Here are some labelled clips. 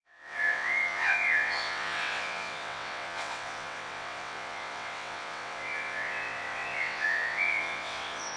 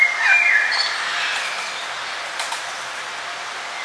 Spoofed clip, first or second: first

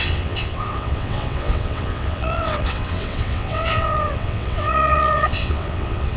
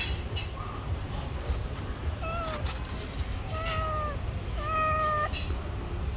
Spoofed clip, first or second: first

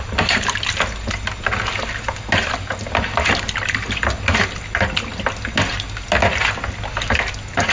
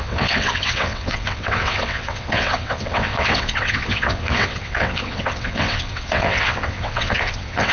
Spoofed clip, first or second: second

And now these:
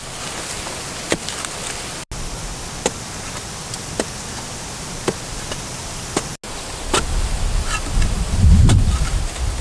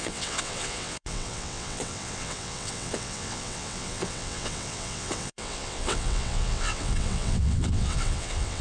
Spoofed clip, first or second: second